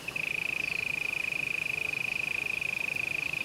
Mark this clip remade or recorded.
recorded